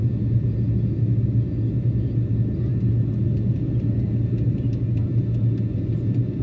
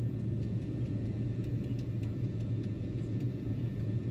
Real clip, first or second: first